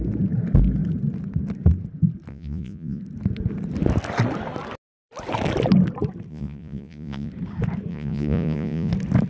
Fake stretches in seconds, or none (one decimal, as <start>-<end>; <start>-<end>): 2.3-3.0; 6.3-7.3; 7.9-8.9